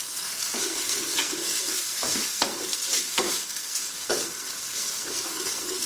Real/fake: fake